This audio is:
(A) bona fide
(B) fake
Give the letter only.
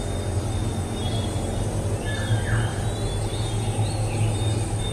A